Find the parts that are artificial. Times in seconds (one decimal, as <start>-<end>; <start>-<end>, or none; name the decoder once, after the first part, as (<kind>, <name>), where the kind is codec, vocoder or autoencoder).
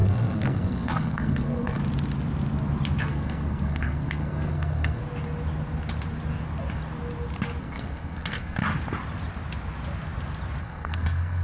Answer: 0.0-1.8 (codec, SNAC); 3.0-5.0; 7.6-8.6; 10.6-11.4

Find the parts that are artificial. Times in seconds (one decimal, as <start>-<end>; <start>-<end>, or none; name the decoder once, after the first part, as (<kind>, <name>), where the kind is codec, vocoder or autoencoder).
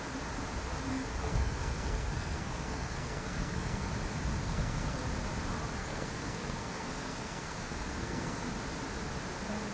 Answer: 0.9-3.9 (codec, SNAC); 4.4-5.0; 5.8-8.4